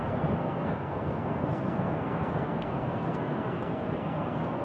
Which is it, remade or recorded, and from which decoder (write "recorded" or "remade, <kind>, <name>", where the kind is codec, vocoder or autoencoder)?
remade, codec, SNAC